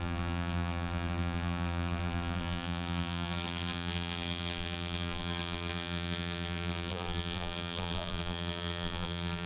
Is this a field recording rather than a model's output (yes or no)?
no